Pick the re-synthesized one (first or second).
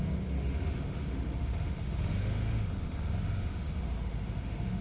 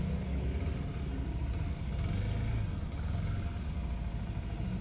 first